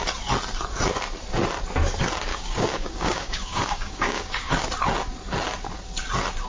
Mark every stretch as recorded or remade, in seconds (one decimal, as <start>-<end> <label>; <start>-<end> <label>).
0.0-2.3 recorded; 2.3-4.5 remade; 4.5-6.5 recorded